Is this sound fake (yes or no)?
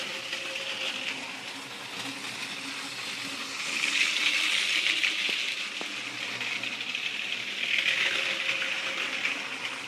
no